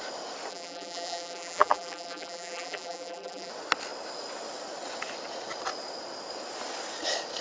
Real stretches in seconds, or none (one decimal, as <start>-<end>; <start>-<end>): 0.0-0.5; 3.5-7.4